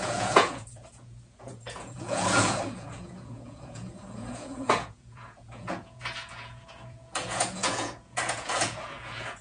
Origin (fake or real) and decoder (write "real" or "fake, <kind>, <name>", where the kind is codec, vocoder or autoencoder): fake, vocoder, Vocos